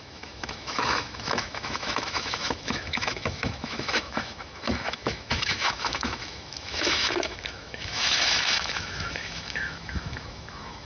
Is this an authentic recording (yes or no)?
no